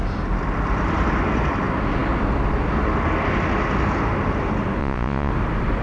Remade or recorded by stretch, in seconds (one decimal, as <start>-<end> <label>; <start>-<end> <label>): 0.0-4.8 recorded; 4.8-5.3 remade; 5.3-5.8 recorded